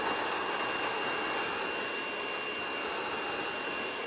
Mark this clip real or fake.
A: real